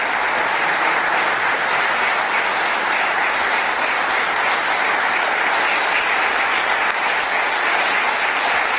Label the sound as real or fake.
real